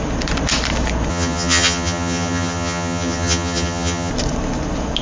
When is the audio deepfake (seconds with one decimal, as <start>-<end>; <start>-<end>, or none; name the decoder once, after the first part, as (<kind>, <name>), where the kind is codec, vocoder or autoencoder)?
1.1-4.1 (vocoder, HiFi-GAN)